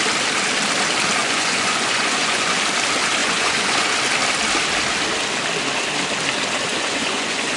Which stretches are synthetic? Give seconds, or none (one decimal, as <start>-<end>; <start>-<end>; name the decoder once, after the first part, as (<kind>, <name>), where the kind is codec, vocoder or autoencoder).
1.2-2.6 (vocoder, Vocos); 3.2-3.9; 6.7-7.6